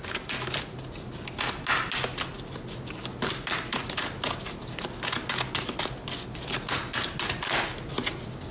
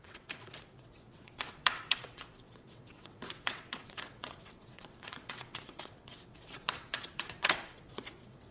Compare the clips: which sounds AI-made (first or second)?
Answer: second